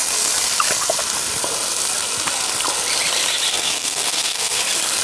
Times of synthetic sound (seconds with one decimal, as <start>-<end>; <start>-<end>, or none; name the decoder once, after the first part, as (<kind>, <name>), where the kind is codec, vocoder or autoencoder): 3.5-4.6 (codec, SNAC)